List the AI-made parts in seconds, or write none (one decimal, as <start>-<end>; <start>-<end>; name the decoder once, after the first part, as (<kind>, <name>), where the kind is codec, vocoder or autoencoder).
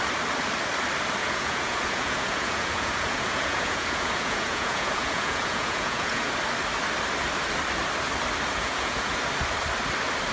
1.2-6.3 (vocoder, Vocos); 8.5-9.1